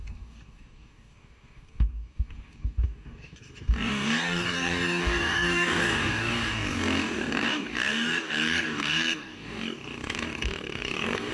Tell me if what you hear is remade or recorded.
remade